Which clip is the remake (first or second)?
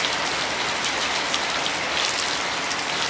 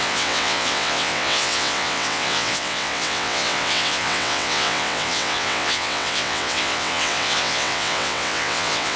second